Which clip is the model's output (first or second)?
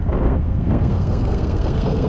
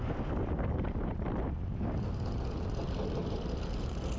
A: first